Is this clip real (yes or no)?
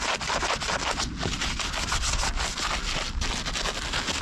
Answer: yes